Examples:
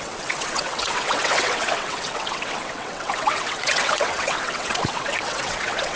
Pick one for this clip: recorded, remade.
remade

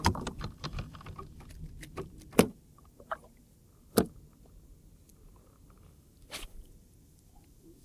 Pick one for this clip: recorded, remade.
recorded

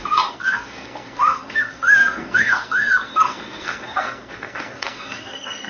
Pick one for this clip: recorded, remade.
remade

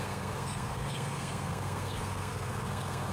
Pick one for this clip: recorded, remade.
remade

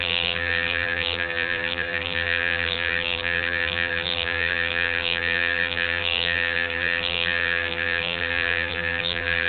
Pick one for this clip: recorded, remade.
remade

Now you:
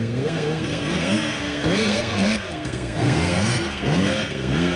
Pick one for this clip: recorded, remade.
remade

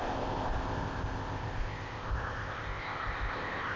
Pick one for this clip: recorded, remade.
remade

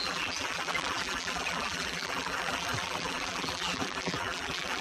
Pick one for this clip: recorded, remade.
remade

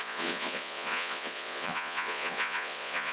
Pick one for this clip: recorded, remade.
remade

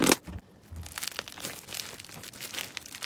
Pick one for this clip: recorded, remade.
recorded